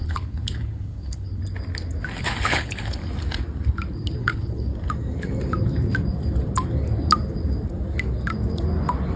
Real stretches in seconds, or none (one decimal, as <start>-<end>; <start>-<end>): 1.4-2.2; 3.0-4.2; 4.7-9.2